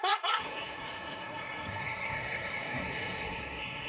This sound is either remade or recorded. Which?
remade